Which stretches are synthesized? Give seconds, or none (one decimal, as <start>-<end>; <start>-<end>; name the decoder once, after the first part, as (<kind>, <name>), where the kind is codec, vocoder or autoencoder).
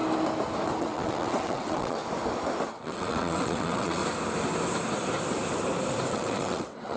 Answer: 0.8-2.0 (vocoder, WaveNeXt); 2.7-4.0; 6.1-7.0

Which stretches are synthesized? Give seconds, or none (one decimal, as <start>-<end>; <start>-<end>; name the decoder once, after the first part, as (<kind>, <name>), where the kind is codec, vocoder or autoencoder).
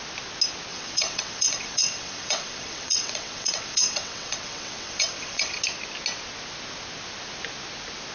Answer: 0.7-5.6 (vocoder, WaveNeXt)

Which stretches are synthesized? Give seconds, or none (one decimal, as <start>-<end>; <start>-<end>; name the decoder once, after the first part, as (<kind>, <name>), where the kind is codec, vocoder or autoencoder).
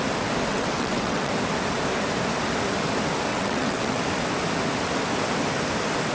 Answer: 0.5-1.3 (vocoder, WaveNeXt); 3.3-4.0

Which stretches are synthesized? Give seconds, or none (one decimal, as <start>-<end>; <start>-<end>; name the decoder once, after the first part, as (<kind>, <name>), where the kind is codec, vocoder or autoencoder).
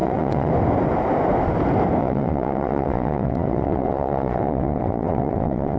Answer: 0.0-0.5 (vocoder, WaveNeXt); 2.0-5.8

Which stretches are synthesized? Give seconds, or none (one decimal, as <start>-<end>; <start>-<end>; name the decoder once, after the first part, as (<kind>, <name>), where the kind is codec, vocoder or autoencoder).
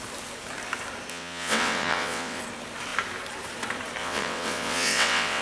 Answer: 1.1-2.4 (vocoder, WaveNeXt); 4.0-5.4